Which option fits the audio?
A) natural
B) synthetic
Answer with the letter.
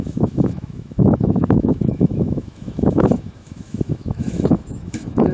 B